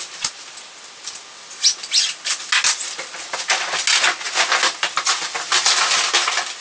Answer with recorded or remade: recorded